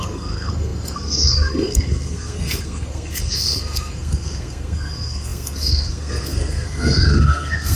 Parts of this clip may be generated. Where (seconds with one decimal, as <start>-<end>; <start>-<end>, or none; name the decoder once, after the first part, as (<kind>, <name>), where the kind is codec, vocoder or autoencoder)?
0.0-7.8 (codec, SNAC)